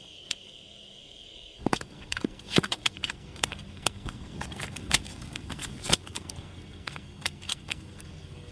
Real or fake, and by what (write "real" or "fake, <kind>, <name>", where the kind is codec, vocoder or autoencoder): fake, codec, SNAC